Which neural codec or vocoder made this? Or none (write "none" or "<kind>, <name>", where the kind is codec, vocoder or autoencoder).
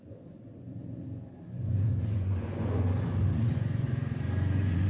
vocoder, Vocos